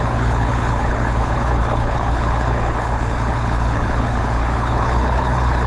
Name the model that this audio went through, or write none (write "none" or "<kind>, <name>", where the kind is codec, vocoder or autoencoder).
codec, HILCodec